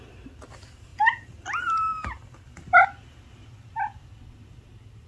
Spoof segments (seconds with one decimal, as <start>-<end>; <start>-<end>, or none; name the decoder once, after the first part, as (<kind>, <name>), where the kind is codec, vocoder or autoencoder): none